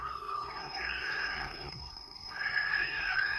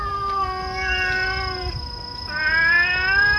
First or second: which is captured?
second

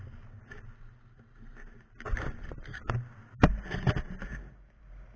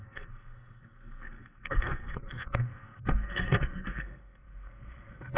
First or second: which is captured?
first